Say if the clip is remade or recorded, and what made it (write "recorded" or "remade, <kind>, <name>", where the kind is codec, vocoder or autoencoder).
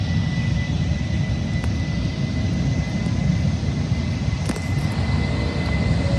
recorded